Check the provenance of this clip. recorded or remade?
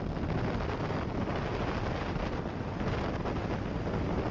recorded